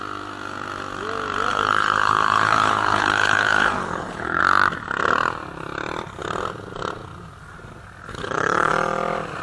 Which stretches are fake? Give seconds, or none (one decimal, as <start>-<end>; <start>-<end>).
1.5-4.4; 8.1-8.7